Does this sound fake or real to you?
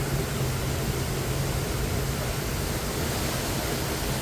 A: real